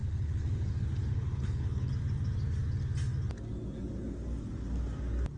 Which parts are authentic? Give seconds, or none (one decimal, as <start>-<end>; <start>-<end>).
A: 0.7-1.1; 1.9-5.4